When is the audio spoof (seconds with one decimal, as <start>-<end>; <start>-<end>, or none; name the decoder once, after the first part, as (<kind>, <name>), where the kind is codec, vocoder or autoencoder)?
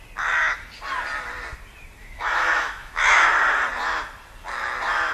2.0-3.0 (autoencoder, DAC-VAE)